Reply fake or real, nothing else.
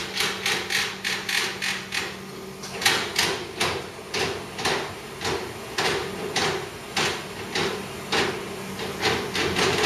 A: real